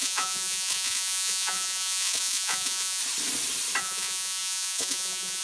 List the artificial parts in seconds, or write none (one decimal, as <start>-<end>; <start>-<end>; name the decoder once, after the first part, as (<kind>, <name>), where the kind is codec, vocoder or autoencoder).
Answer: 0.0-3.0 (vocoder, Vocos); 3.8-5.4